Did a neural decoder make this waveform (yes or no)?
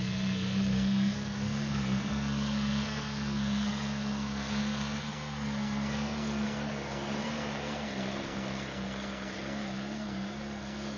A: yes